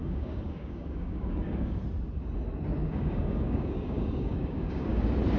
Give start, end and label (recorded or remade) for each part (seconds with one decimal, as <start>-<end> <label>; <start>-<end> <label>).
0.0-1.8 remade; 1.8-2.8 recorded; 2.8-5.0 remade; 5.0-5.4 recorded